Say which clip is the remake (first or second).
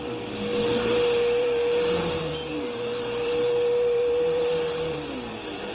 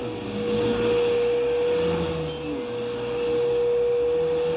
first